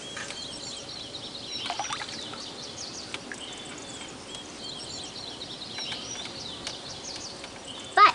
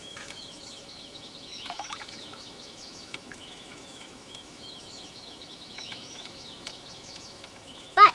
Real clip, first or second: first